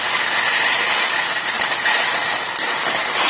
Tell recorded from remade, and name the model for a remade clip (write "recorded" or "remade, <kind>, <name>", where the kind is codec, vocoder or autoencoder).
recorded